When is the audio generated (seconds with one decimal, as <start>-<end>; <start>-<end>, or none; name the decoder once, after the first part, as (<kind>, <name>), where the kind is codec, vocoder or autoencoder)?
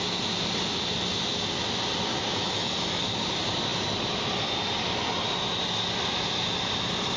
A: 2.1-3.0 (autoencoder, DAC-VAE)